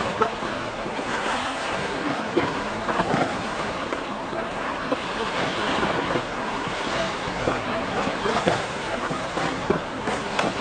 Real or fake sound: fake